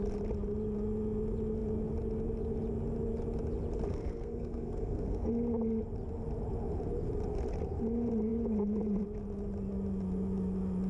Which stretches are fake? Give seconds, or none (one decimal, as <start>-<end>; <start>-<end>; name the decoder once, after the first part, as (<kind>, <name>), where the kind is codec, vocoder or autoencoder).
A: 3.9-5.3 (codec, SNAC)